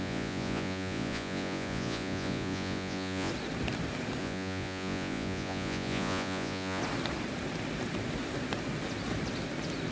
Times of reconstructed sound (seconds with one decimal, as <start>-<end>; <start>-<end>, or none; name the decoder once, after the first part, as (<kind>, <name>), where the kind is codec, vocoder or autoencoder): 0.0-3.3 (vocoder, Vocos); 4.2-6.8